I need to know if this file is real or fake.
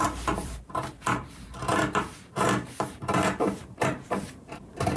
fake